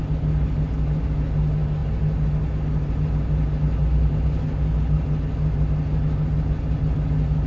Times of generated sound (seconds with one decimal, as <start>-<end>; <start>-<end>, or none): none